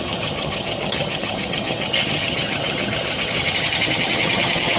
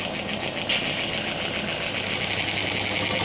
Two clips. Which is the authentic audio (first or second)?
second